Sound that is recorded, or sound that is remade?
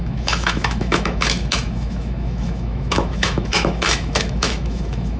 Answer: remade